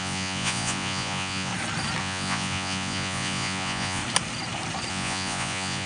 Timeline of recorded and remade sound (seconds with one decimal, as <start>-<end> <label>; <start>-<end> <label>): 0.0-1.5 remade; 1.5-2.0 recorded; 2.0-4.0 remade; 4.0-4.9 recorded; 4.9-5.9 remade